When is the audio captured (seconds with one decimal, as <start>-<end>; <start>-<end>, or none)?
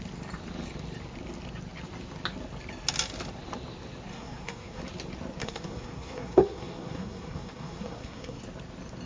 0.0-4.1; 4.8-5.4; 8.4-9.1